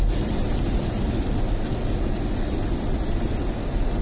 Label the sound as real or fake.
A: real